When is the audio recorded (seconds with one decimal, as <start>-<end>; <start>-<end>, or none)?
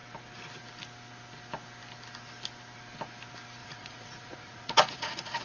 0.0-3.6